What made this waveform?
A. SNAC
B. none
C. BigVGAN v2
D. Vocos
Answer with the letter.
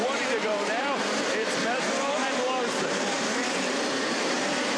C